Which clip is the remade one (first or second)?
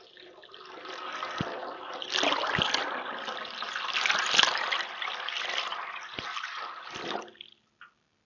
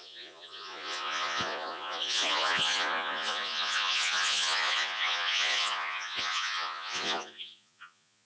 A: second